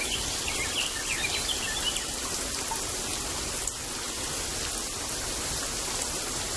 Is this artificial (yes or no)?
no